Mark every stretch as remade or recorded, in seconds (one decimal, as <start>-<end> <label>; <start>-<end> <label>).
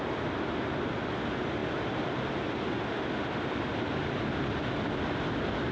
0.0-5.7 recorded